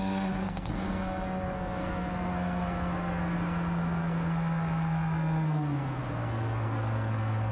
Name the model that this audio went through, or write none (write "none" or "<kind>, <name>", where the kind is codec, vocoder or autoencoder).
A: codec, SNAC